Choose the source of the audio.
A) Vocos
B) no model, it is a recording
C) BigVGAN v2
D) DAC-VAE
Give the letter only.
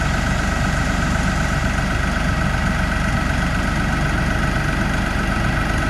B